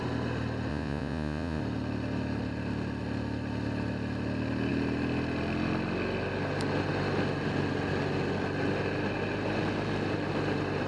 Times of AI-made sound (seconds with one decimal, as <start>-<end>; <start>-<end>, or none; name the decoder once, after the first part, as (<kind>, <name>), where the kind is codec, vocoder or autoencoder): 0.7-1.6 (vocoder, Vocos)